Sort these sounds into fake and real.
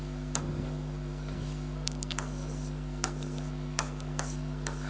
fake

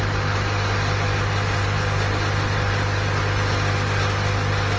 real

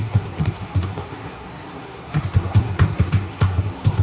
fake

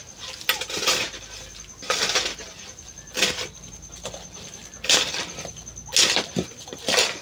real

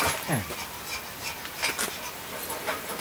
real